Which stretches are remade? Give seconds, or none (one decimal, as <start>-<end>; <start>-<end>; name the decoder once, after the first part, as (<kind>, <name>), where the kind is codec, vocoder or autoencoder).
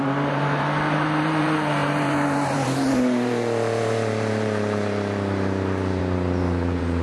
0.0-7.0 (vocoder, BigVGAN v2)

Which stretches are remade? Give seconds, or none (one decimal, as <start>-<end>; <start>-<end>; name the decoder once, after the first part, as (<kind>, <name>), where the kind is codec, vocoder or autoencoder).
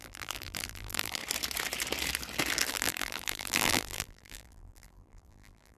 0.0-1.2 (vocoder, BigVGAN v2); 2.7-5.8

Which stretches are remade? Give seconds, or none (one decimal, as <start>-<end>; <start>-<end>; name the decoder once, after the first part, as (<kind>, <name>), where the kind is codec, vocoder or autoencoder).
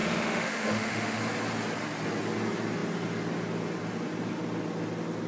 0.0-1.2 (autoencoder, DAC-VAE)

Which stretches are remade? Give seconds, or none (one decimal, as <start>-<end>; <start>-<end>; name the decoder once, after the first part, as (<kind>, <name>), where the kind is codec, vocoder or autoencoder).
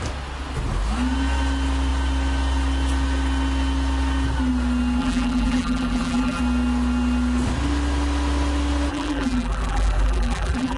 5.0-6.4 (vocoder, BigVGAN v2); 8.9-10.8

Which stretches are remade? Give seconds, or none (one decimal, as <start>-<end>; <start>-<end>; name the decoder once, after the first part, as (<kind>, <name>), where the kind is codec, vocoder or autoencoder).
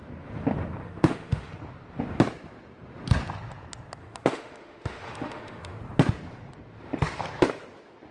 0.8-1.5 (autoencoder, DAC-VAE); 4.0-5.8